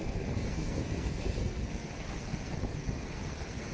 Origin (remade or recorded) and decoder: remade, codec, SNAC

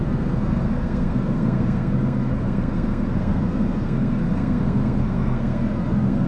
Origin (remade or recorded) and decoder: remade, codec, SNAC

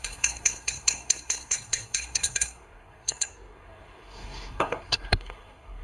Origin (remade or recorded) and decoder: remade, codec, SNAC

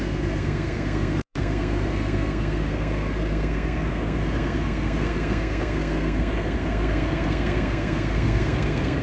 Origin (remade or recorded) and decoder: remade, codec, SNAC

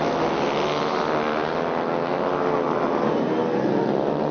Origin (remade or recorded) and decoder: recorded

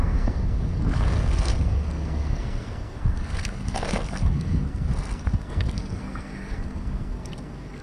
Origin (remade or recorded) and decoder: remade, codec, SNAC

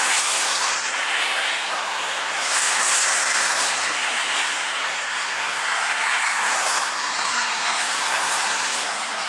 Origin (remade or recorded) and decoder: remade, codec, SNAC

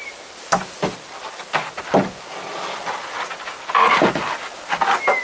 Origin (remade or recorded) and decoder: recorded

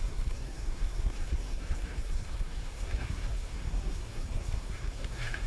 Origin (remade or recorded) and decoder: remade, codec, SNAC